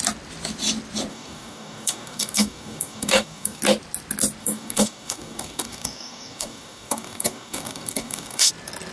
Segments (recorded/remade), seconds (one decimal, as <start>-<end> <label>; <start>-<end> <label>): 0.0-1.1 recorded; 1.1-3.6 remade; 3.6-4.4 recorded; 4.4-8.5 remade; 8.5-8.9 recorded